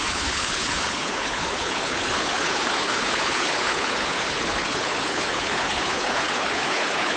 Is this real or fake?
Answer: fake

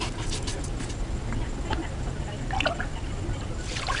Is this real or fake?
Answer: real